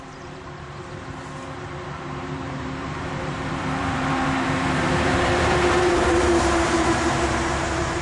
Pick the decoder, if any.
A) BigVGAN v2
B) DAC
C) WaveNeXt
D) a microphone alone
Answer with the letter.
A